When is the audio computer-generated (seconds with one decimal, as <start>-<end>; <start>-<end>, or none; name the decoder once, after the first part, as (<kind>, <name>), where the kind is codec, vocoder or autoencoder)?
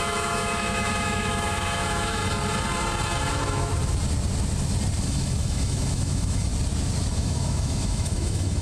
0.0-2.2 (autoencoder, DAC-VAE); 3.2-3.7; 5.0-6.5; 7.1-8.6